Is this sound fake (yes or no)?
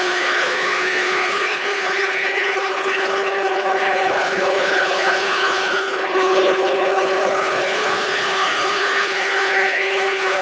yes